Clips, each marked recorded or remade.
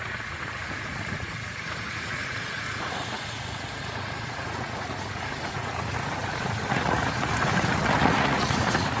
remade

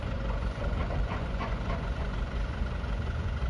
remade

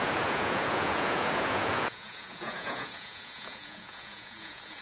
remade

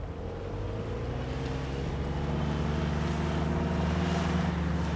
recorded